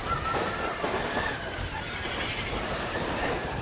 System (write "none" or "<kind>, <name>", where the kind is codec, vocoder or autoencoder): none